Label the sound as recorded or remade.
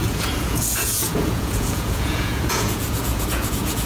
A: remade